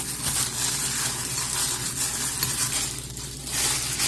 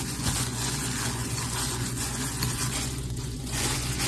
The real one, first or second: first